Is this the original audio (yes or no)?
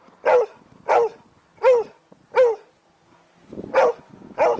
yes